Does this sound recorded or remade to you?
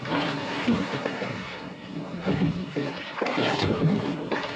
remade